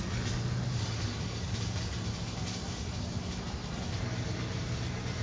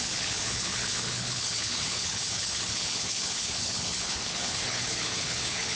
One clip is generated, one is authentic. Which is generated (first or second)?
second